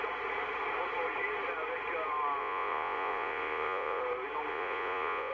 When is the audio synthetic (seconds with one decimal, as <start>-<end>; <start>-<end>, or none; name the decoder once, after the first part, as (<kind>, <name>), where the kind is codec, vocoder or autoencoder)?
2.4-4.0 (vocoder, Vocos); 4.5-5.3